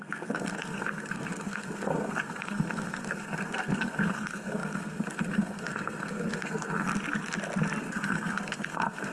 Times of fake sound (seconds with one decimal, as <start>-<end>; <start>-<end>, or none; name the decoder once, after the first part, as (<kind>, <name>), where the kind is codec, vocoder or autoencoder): 0.0-6.9 (codec, SNAC); 7.8-9.1